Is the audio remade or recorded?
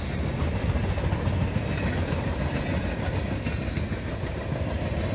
recorded